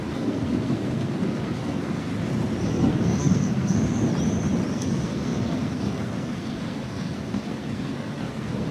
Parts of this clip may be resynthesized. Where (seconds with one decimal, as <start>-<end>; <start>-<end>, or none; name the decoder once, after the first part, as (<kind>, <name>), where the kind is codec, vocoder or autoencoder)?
0.0-2.1 (codec, SNAC); 2.7-4.0; 4.7-8.7